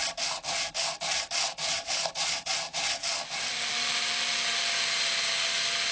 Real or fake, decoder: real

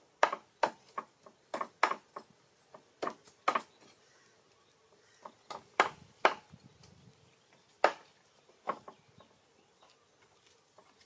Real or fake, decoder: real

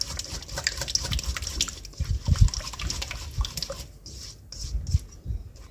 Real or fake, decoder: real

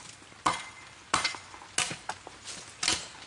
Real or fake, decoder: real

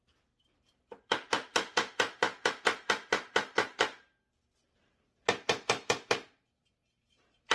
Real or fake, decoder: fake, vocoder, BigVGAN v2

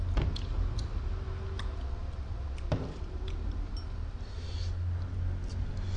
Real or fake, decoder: real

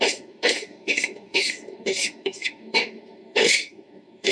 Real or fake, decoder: fake, autoencoder, DAC-VAE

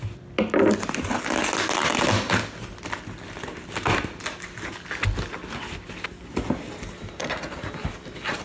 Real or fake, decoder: real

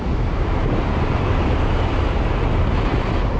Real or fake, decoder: real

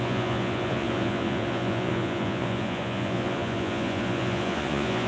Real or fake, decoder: fake, vocoder, Vocos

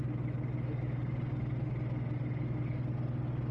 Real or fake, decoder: real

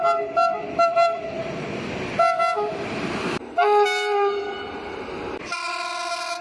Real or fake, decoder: real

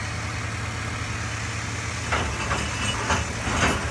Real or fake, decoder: real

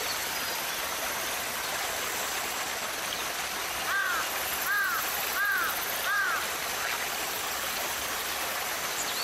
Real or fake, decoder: real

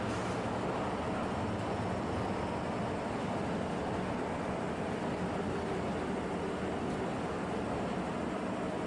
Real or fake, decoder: real